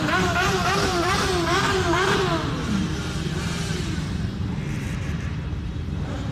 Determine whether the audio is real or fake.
fake